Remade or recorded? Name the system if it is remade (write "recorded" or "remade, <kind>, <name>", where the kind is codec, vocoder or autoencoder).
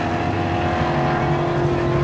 recorded